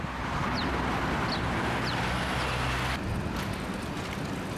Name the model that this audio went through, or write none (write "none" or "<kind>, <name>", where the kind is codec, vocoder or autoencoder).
none